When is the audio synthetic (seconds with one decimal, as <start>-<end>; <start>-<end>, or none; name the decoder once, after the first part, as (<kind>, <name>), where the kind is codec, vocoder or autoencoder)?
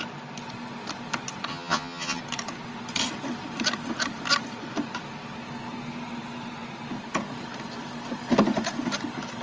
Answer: 1.5-2.2 (vocoder, HiFi-GAN)